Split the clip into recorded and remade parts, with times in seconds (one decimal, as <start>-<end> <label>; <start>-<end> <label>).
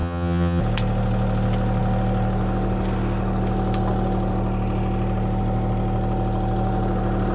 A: 0.0-0.6 remade; 0.6-7.3 recorded